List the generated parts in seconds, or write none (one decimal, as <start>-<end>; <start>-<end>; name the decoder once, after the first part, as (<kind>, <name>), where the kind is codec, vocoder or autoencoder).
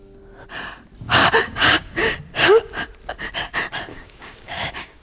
1.4-2.2 (codec, DAC); 3.9-5.0